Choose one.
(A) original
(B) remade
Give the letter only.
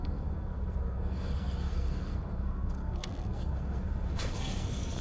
B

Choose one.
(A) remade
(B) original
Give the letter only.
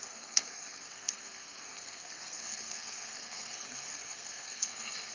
A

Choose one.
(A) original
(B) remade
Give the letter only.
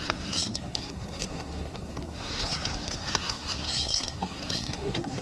B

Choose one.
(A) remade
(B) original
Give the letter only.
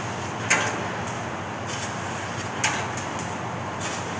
B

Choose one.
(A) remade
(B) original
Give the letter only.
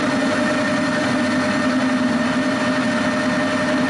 B